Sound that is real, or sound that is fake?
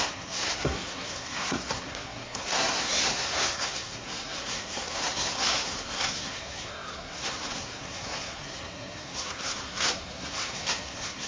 fake